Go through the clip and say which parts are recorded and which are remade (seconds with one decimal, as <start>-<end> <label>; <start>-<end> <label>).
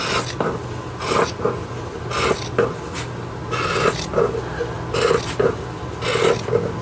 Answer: 0.0-6.8 recorded